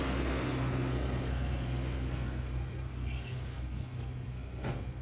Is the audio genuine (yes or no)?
no